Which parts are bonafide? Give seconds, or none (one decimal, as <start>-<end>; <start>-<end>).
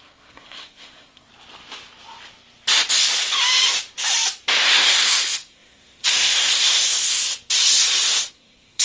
1.3-4.7; 7.2-8.3